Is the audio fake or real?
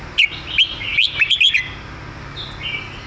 real